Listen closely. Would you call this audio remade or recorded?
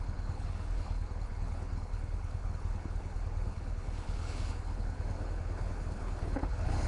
remade